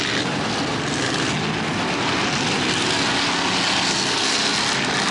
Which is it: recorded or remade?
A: recorded